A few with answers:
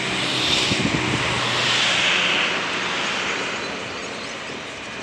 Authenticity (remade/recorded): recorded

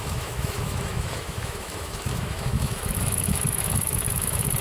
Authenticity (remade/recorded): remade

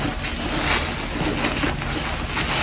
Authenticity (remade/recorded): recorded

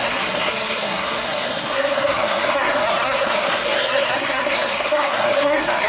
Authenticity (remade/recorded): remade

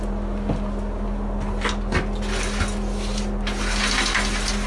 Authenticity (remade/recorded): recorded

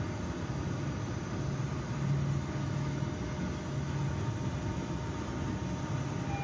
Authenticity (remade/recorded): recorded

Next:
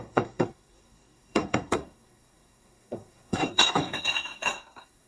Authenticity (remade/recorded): remade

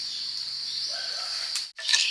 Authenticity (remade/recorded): recorded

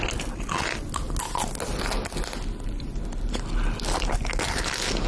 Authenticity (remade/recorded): recorded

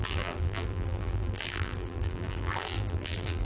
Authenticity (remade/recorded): remade